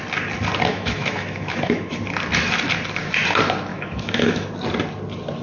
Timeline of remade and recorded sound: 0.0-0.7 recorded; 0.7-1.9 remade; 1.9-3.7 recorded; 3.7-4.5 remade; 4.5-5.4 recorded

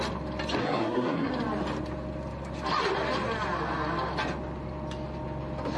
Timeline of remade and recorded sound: 0.0-0.6 recorded; 0.6-1.3 remade; 1.3-5.8 recorded